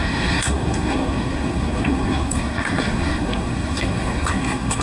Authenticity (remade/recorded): remade